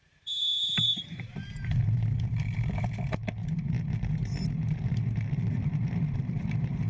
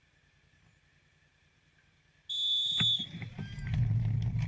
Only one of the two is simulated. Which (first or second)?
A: first